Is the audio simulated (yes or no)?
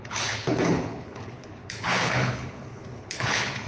yes